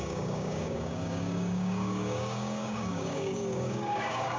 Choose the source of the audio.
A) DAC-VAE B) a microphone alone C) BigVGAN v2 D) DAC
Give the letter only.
D